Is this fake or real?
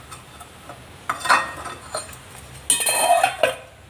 real